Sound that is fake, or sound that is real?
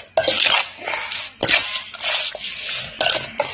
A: real